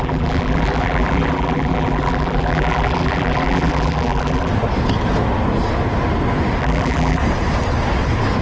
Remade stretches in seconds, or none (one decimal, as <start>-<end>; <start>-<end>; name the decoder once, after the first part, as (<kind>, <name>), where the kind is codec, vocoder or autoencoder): 0.0-4.5 (vocoder, BigVGAN v2); 6.6-7.2